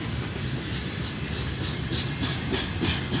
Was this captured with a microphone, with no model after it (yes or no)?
yes